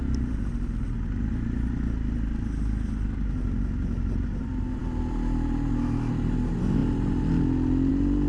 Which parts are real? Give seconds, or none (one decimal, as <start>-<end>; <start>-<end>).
0.0-8.3